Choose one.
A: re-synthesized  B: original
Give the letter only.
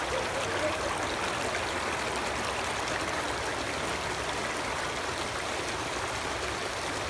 B